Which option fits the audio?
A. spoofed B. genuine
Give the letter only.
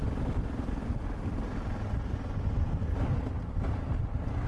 B